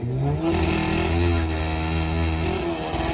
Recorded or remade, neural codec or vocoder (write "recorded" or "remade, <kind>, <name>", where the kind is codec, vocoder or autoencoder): recorded